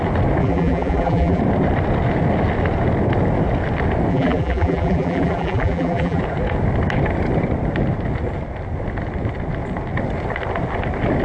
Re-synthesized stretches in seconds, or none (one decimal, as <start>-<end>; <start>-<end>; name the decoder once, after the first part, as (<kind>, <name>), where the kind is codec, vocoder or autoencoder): 0.4-1.4 (vocoder, BigVGAN v2); 4.1-6.2